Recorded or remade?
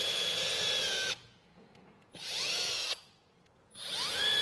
remade